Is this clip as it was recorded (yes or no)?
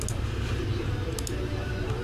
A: yes